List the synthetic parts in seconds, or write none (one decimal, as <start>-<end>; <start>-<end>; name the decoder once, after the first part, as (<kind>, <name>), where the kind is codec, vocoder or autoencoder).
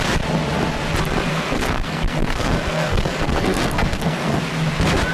1.3-4.4 (codec, SNAC)